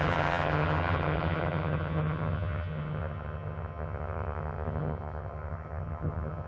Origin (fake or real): fake